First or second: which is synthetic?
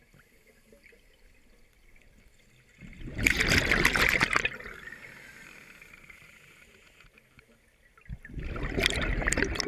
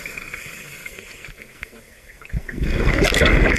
second